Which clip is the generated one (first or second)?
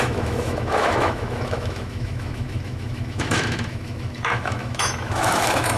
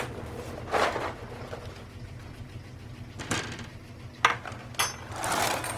first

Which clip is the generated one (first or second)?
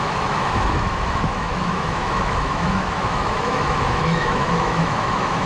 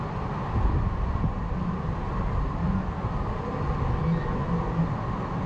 first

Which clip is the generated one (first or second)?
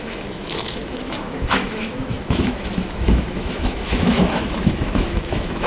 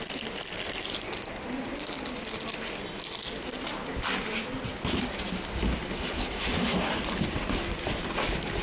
first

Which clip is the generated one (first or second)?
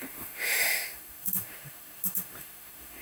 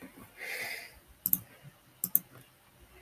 first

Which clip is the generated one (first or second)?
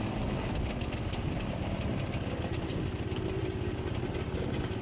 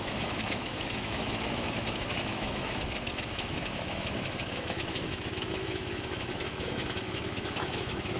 second